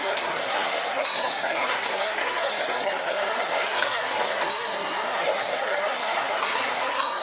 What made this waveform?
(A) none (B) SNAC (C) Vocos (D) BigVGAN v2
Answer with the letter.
B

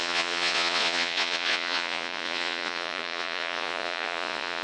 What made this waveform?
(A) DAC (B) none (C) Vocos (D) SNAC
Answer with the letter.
C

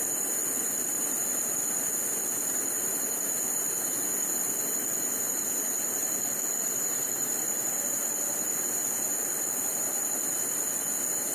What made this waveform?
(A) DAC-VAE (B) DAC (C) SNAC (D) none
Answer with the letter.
D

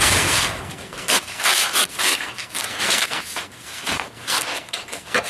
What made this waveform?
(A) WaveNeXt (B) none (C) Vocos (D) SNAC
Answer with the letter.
D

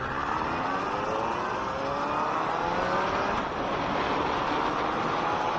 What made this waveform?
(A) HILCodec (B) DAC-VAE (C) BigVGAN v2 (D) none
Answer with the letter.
D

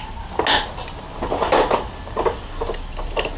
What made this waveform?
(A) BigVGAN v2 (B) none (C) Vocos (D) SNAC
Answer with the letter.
B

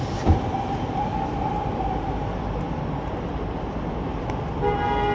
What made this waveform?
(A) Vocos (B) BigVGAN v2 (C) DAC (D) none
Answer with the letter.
D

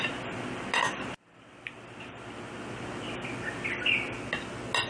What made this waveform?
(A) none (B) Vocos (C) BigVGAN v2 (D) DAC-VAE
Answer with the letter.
A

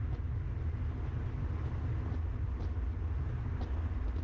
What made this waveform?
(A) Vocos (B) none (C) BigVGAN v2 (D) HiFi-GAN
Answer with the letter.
B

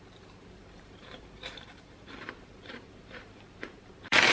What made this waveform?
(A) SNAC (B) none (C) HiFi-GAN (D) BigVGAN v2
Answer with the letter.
D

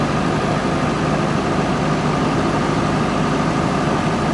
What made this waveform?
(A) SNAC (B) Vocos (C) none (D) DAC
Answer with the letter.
C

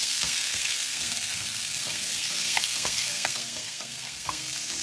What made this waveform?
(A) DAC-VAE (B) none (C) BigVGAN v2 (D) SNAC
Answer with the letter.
D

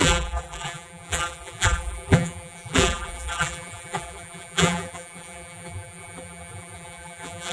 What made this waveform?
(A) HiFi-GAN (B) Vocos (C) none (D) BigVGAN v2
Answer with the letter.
D